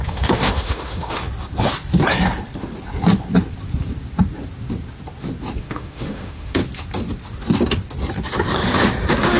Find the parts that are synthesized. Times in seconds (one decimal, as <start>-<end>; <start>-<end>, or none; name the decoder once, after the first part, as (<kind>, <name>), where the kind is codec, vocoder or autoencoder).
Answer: 0.0-1.2 (autoencoder, DAC-VAE); 5.6-6.6